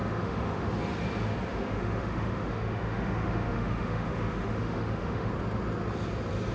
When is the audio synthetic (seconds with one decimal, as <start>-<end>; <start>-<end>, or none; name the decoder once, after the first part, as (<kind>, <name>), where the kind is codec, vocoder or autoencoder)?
0.0-0.7 (autoencoder, DAC-VAE); 1.5-5.3